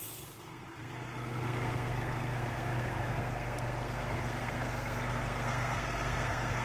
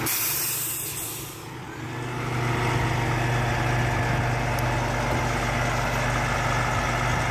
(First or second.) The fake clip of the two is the first